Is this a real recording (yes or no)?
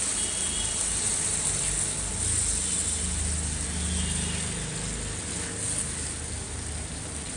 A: yes